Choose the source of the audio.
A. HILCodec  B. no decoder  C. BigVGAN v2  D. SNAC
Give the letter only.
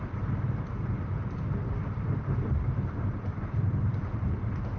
C